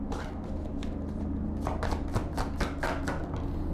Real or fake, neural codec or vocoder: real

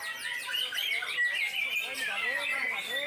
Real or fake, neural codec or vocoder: real